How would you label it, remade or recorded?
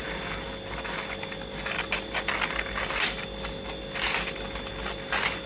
recorded